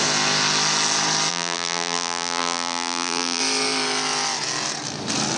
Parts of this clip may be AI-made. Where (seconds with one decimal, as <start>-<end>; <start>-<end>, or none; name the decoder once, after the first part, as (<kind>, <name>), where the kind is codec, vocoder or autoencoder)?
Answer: 1.3-3.4 (vocoder, BigVGAN v2)